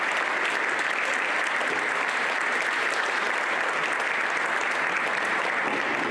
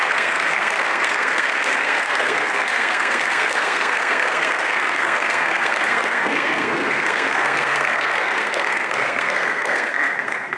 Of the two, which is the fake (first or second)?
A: second